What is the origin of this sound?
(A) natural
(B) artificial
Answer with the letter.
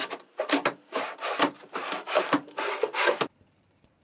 B